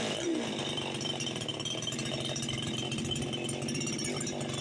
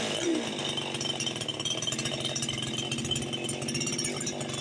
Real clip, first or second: second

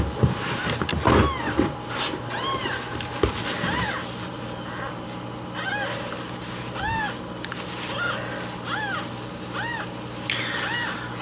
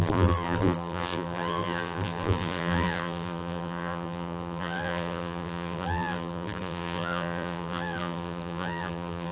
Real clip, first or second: first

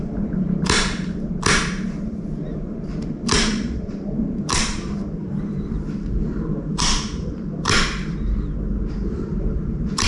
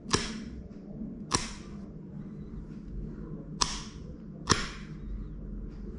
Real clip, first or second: second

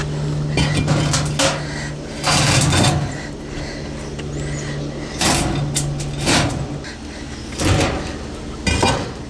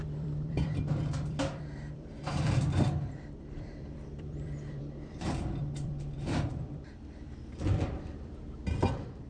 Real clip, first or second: first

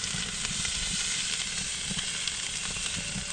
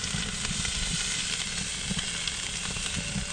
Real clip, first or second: second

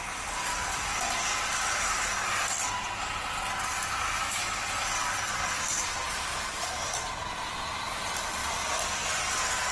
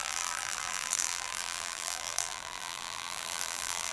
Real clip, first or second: first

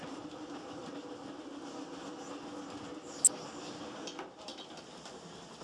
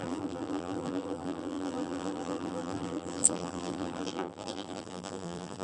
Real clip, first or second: first